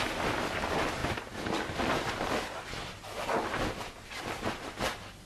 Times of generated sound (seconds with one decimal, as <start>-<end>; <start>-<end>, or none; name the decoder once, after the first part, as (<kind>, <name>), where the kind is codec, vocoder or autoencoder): 0.0-5.3 (vocoder, BigVGAN v2)